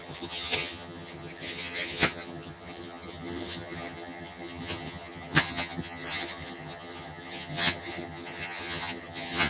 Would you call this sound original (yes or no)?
no